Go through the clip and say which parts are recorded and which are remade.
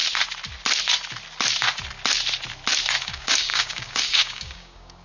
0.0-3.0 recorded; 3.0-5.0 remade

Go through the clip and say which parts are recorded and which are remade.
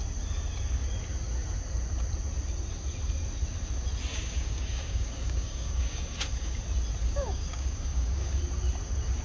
0.0-4.1 recorded; 4.1-6.6 remade; 6.6-7.0 recorded; 7.0-8.4 remade; 8.4-9.2 recorded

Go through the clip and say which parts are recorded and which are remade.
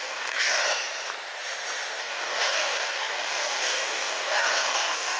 0.0-0.6 remade; 0.6-2.0 recorded; 2.0-5.2 remade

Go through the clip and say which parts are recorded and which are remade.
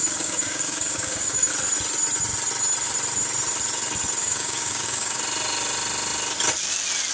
0.0-1.5 remade; 1.5-4.2 recorded; 4.2-5.2 remade; 5.2-7.1 recorded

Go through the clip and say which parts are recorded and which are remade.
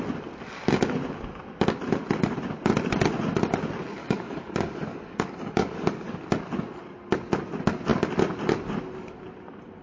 0.0-4.0 recorded; 4.0-6.2 remade; 6.2-9.8 recorded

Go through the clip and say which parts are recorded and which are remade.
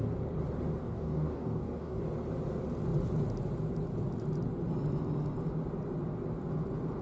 0.0-0.8 recorded; 0.8-2.0 remade; 2.0-7.0 recorded